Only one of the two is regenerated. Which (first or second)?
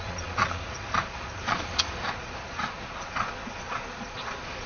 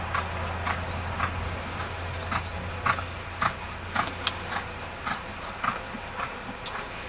first